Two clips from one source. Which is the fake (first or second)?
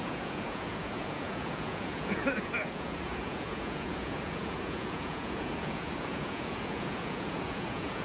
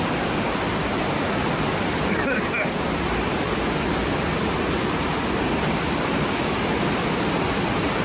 first